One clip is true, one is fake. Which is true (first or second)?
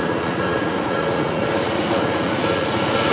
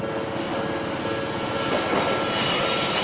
second